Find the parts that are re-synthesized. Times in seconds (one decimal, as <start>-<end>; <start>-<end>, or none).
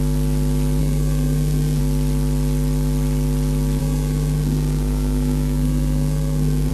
0.8-1.8; 3.8-6.7